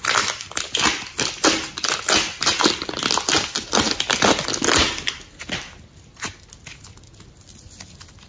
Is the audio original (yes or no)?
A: yes